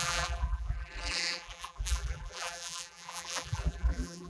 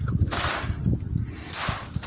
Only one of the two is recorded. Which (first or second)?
second